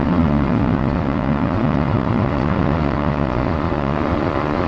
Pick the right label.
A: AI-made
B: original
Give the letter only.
A